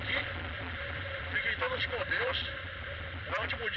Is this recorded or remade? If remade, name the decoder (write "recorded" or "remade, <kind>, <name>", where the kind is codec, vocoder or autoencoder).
remade, vocoder, BigVGAN v2